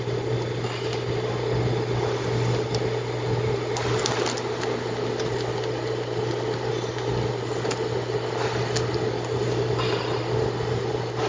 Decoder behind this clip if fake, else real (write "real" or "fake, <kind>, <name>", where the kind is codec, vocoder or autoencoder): real